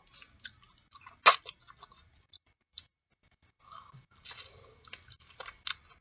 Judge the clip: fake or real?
real